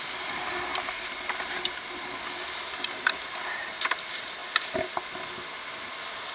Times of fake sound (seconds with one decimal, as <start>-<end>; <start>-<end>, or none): none